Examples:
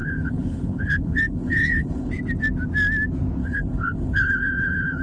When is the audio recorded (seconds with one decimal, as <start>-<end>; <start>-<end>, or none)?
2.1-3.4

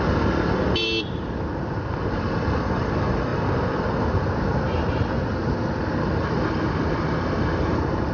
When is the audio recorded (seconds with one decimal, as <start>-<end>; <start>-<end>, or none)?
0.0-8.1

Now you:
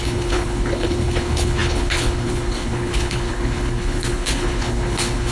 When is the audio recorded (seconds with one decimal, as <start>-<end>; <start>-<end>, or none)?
none

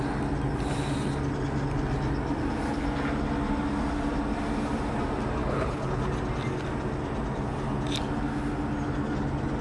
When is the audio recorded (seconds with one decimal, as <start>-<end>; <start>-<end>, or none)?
0.0-5.4; 6.0-9.6

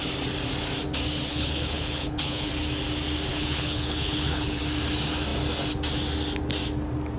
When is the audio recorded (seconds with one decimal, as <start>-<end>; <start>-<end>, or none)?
0.0-1.3; 2.5-3.3; 4.6-7.2

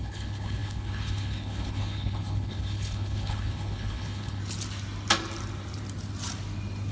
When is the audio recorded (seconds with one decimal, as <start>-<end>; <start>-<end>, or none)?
4.4-6.9

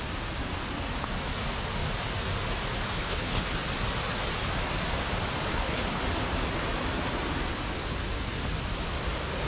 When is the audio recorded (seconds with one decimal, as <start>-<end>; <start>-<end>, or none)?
0.0-2.9; 3.6-5.5; 6.0-9.5

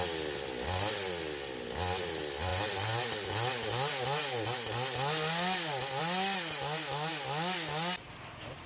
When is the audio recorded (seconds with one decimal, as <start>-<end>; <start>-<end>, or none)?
0.0-8.7